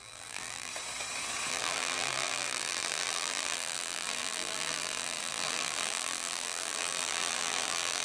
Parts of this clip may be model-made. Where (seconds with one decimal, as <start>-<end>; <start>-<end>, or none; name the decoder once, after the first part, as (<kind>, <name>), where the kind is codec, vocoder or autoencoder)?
0.0-0.7 (vocoder, BigVGAN v2); 1.5-8.0